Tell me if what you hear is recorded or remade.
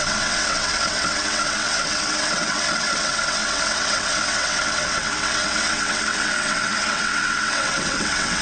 remade